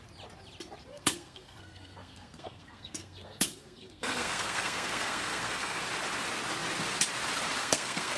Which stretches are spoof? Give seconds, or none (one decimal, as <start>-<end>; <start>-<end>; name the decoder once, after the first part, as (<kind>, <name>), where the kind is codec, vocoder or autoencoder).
0.9-5.8 (codec, SNAC); 7.6-8.2